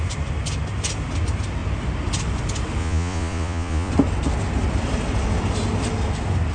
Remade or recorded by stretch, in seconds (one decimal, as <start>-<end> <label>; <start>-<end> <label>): 0.0-2.8 recorded; 2.8-3.9 remade; 3.9-6.5 recorded